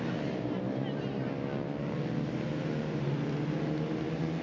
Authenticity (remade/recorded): recorded